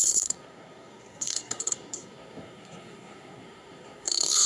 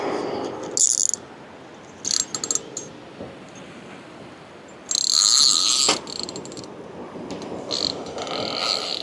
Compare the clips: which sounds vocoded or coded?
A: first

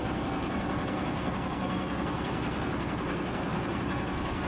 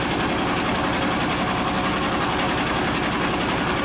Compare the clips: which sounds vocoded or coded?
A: first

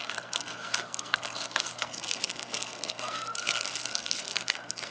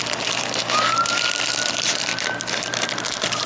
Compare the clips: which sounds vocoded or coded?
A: first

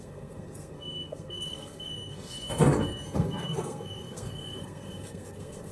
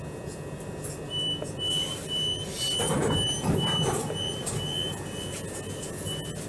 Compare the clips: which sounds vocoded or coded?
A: first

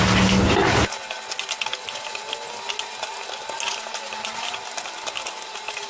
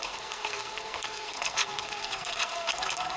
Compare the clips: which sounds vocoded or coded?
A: second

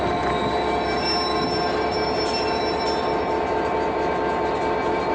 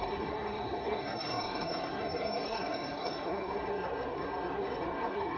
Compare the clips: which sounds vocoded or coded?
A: second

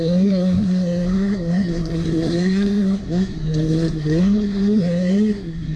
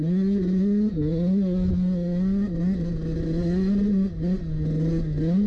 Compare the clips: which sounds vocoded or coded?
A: first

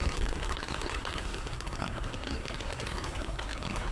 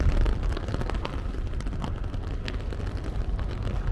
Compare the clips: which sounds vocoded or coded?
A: first